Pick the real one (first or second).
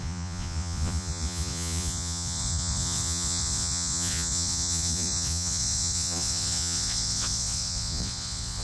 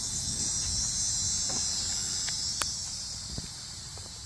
second